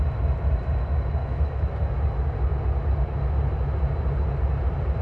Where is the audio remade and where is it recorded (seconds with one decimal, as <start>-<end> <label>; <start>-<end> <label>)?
0.0-1.2 recorded; 1.2-1.7 remade; 1.7-5.0 recorded

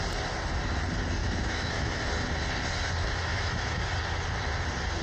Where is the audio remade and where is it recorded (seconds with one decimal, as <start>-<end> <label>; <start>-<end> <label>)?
0.0-1.2 recorded; 1.2-2.0 remade; 2.0-3.3 recorded; 3.3-3.8 remade; 3.8-5.0 recorded

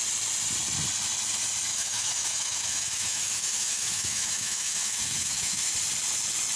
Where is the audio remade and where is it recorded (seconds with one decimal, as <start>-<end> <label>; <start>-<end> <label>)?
0.0-1.7 recorded; 1.7-5.7 remade; 5.7-6.6 recorded

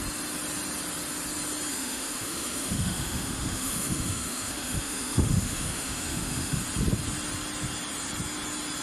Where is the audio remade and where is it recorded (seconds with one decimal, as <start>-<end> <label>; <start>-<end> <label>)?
0.0-1.7 recorded; 1.7-6.6 remade; 6.6-8.8 recorded

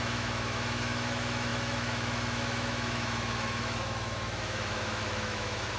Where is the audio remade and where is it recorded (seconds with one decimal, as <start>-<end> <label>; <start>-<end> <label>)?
0.0-5.8 remade

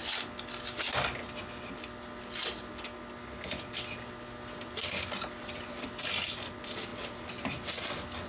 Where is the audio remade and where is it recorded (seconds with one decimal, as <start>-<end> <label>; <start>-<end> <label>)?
0.0-8.3 recorded

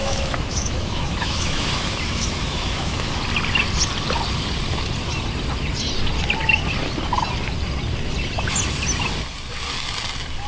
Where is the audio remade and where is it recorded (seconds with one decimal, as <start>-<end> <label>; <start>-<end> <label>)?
0.0-3.2 remade; 3.2-10.5 recorded